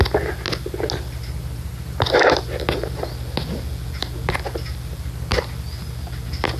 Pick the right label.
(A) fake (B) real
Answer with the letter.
B